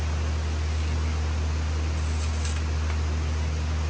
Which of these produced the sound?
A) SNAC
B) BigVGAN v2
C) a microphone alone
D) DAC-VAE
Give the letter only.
C